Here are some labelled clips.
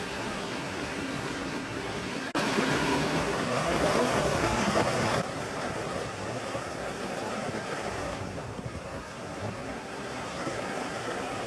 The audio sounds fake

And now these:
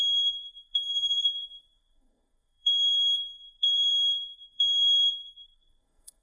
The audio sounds fake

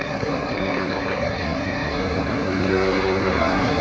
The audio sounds fake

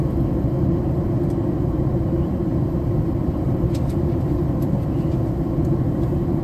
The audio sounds real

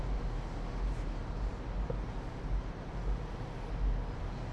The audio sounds real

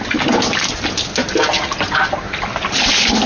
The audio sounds real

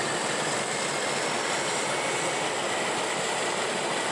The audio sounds real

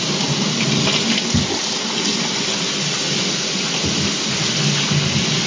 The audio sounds real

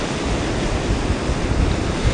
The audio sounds real